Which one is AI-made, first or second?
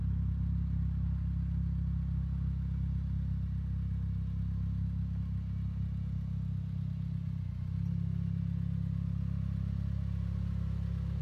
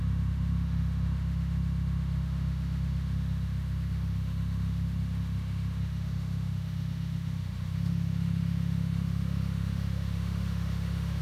second